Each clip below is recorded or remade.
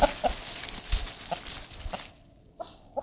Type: recorded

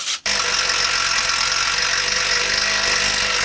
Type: recorded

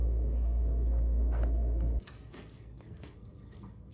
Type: remade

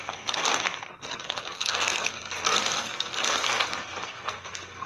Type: remade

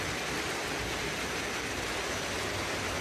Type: recorded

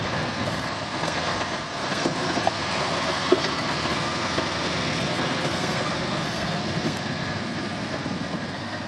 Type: remade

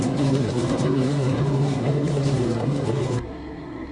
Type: remade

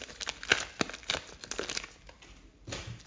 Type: recorded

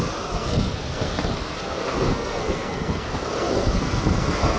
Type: remade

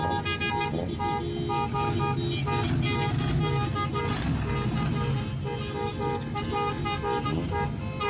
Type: recorded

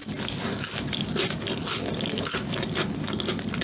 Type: recorded